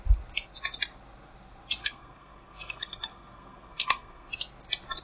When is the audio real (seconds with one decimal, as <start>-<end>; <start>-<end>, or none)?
0.0-1.8; 4.3-5.0